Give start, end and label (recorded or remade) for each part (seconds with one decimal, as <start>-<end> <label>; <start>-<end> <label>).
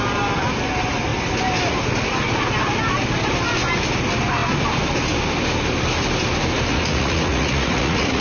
0.0-6.7 recorded; 6.7-8.2 remade